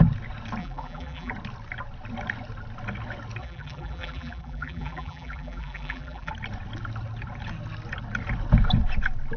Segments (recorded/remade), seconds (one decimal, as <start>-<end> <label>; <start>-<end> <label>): 0.0-0.6 recorded; 0.6-1.3 remade; 1.3-3.4 recorded; 3.4-6.3 remade; 6.3-9.4 recorded

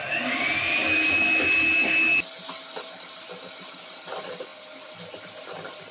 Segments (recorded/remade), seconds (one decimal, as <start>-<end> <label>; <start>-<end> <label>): 0.0-5.9 recorded

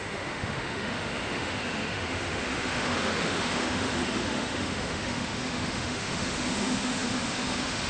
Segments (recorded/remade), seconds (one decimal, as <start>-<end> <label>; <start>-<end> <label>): 0.0-7.9 remade

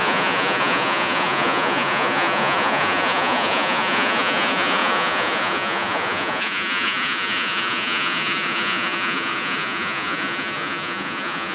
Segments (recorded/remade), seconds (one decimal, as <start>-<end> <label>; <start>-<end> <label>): 0.0-11.5 remade